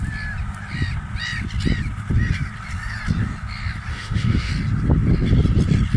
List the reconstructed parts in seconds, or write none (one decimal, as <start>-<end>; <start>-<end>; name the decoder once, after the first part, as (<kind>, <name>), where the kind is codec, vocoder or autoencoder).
3.9-4.5 (autoencoder, DAC-VAE)